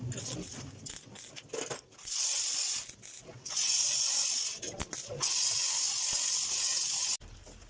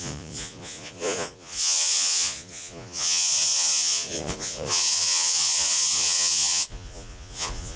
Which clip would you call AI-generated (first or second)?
second